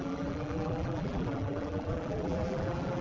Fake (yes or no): yes